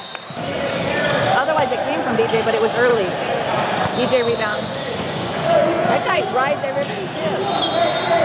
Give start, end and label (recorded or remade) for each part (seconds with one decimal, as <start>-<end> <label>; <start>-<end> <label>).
0.0-4.5 recorded; 4.5-6.2 remade; 6.2-8.2 recorded